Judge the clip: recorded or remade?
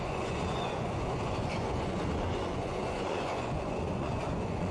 remade